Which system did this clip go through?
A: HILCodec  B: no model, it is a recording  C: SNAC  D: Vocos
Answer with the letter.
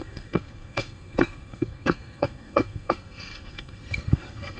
C